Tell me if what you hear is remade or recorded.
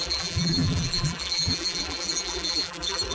remade